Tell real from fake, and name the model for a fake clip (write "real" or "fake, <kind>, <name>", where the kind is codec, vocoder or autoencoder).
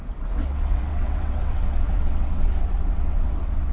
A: fake, vocoder, WaveNeXt